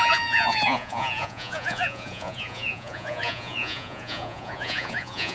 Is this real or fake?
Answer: fake